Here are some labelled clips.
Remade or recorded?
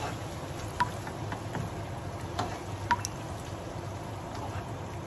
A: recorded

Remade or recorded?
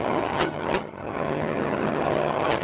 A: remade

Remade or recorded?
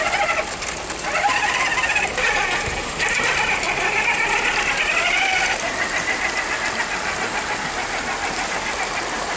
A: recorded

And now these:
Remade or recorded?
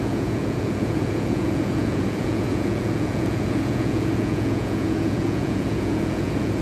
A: remade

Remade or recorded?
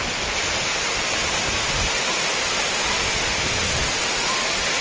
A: recorded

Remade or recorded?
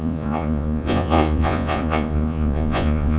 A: remade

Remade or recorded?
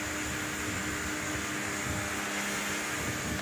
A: recorded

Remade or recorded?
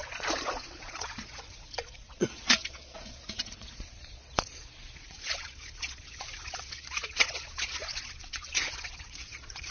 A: remade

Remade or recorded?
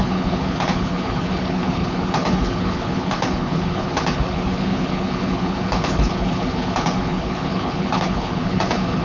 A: remade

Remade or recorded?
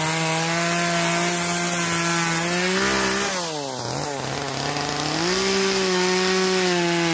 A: recorded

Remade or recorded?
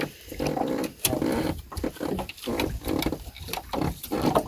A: recorded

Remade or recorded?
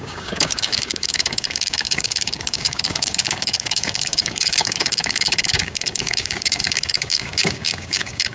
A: remade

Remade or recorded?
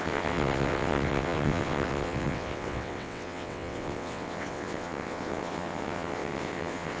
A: remade